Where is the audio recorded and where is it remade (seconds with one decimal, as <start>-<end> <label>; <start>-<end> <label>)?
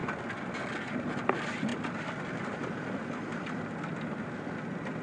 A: 0.0-5.0 recorded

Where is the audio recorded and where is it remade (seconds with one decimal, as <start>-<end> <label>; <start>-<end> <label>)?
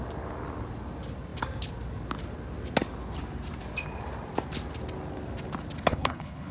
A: 0.0-5.9 recorded; 5.9-6.5 remade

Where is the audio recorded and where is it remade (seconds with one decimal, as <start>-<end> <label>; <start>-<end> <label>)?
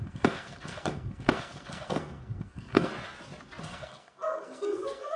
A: 0.0-2.9 remade; 2.9-3.6 recorded; 3.6-5.2 remade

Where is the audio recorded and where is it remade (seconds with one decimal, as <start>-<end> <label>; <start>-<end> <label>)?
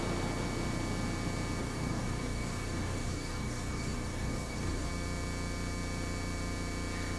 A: 0.0-1.6 recorded; 1.6-4.9 remade; 4.9-7.2 recorded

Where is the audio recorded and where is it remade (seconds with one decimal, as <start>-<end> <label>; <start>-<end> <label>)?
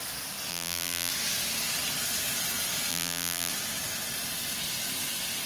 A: 0.0-0.5 recorded; 0.5-1.1 remade; 1.1-2.9 recorded; 2.9-3.5 remade; 3.5-5.5 recorded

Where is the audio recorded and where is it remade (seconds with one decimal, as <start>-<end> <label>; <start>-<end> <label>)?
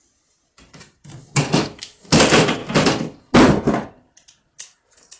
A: 0.0-5.2 recorded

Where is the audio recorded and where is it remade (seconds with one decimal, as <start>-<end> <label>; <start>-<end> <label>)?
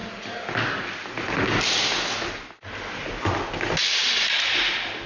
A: 0.0-5.1 recorded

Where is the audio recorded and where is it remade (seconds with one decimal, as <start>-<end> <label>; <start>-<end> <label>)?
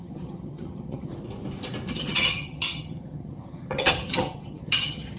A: 0.0-1.1 remade; 1.1-1.9 recorded; 1.9-5.2 remade